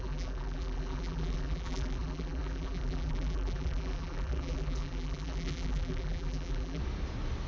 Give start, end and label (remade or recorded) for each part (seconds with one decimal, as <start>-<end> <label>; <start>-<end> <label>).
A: 0.0-6.8 remade; 6.8-7.5 recorded